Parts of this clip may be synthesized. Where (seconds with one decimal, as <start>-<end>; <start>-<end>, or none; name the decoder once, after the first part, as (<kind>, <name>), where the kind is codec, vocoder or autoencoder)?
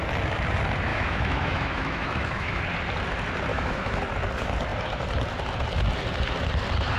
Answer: 0.9-2.6 (autoencoder, DAC-VAE); 3.5-4.0